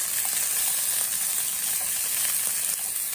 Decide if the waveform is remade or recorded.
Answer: recorded